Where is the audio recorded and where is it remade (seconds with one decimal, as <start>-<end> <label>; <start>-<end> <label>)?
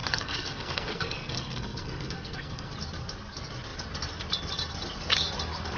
0.0-2.7 remade; 2.7-5.8 recorded